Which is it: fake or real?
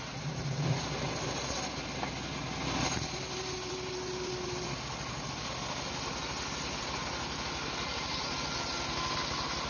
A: real